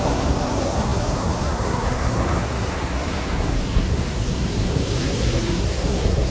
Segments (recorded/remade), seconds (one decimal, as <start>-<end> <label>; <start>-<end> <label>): 0.0-6.3 remade